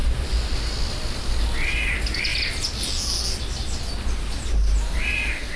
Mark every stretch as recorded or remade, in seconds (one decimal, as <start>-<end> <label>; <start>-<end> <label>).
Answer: 0.0-5.6 recorded